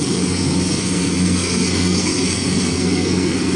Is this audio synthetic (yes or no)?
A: yes